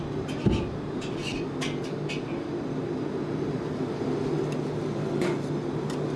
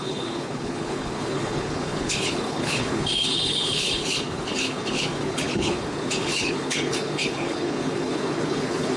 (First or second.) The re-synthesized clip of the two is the second